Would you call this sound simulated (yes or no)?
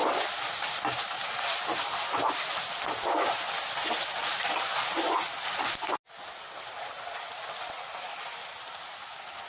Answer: no